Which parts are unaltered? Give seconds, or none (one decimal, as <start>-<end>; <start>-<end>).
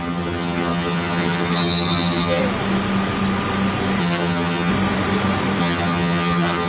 2.4-4.0; 4.7-5.6